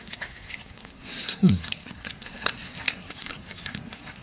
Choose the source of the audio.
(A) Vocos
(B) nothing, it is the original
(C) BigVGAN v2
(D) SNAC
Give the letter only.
D